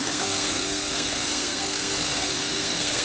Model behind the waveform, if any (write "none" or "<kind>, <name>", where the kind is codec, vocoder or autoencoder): codec, SNAC